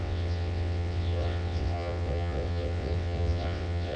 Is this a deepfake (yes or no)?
yes